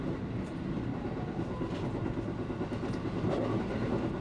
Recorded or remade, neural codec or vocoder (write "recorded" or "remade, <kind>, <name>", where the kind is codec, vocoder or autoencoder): recorded